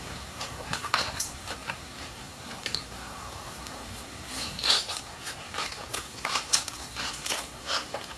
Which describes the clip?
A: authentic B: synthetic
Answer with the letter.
B